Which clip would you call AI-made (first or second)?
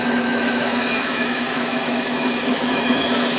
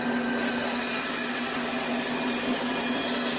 first